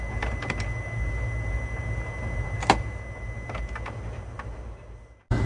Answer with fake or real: real